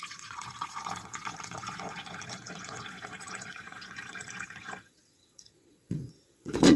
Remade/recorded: remade